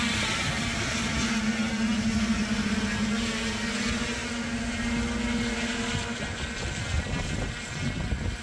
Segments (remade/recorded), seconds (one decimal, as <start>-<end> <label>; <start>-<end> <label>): 0.0-8.4 recorded